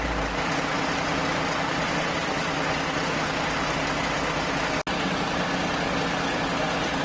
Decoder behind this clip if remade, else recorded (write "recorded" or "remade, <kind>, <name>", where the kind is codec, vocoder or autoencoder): recorded